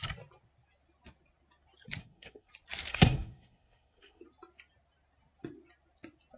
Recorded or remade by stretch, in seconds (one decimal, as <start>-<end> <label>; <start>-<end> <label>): 0.0-2.0 recorded; 2.0-2.5 remade; 2.5-2.9 recorded; 2.9-4.2 remade; 4.2-6.4 recorded